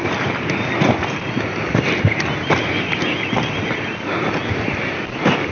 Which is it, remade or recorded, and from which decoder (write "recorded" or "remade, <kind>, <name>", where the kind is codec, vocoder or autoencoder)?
recorded